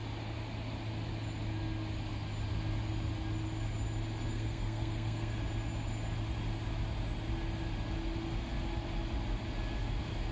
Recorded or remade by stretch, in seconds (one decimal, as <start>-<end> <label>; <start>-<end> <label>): 0.0-4.3 recorded; 4.3-5.4 remade; 5.4-10.3 recorded

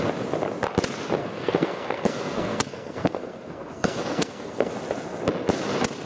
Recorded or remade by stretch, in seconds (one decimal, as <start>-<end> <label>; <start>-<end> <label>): 0.0-1.2 recorded; 1.2-4.7 remade; 4.7-6.1 recorded

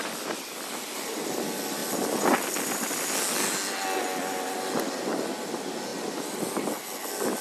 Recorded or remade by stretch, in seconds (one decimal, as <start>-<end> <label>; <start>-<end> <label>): 0.0-7.4 recorded